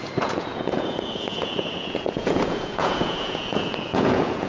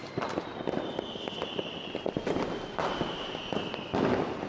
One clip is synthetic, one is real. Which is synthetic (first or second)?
first